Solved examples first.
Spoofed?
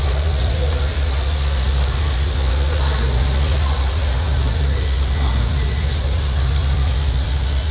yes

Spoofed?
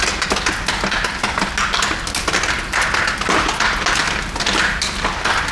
no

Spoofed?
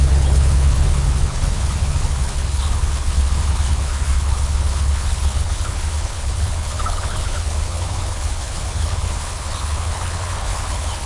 yes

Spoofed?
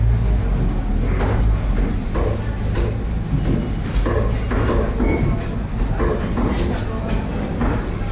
no